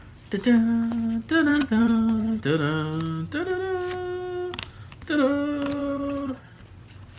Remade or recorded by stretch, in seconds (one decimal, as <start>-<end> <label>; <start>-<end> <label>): 0.0-1.5 recorded; 1.5-2.4 remade; 2.4-5.8 recorded; 5.8-6.6 remade; 6.6-7.2 recorded